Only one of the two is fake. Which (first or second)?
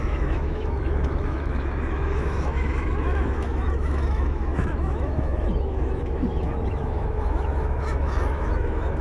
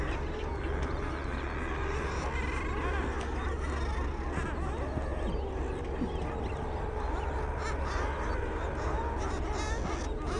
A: first